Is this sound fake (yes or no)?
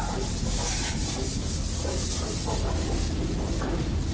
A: no